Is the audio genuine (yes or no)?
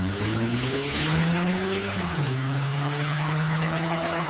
no